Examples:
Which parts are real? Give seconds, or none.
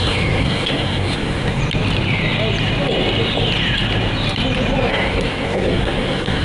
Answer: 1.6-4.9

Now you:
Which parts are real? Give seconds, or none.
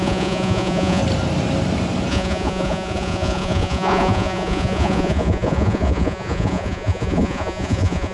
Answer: 1.0-2.1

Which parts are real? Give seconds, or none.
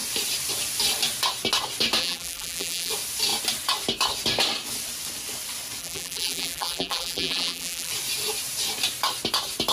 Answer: 0.0-2.0; 2.9-5.8; 7.9-9.7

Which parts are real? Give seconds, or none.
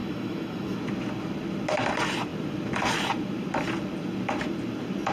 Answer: 0.8-5.1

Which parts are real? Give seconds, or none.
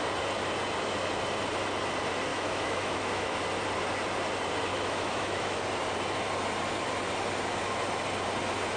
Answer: 0.0-2.3; 3.4-4.7; 5.6-8.8